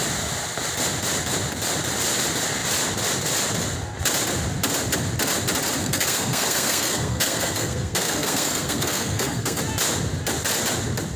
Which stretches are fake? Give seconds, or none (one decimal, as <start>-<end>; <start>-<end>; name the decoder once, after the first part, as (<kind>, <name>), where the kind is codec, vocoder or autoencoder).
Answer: 5.8-9.6 (codec, SNAC)